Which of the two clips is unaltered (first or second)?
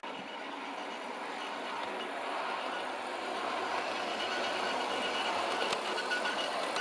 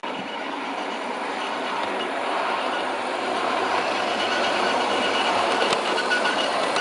first